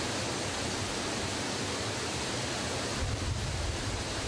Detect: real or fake fake